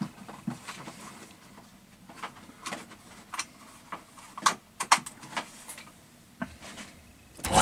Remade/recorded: recorded